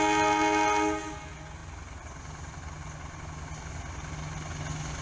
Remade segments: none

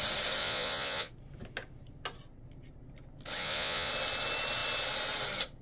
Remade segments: 0.4-1.1 (vocoder, Vocos); 3.4-3.9

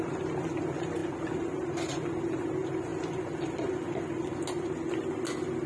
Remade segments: none

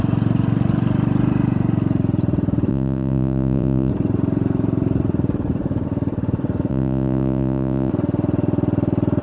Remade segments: 2.7-3.9 (vocoder, Vocos); 6.7-7.9

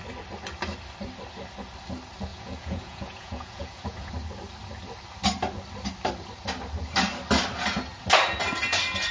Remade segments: 2.3-4.1 (vocoder, Vocos)

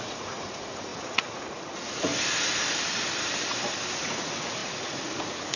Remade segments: 0.0-2.1 (vocoder, Vocos); 3.9-5.6

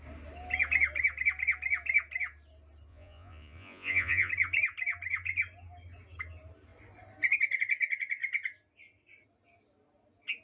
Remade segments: 2.9-4.3 (vocoder, Vocos)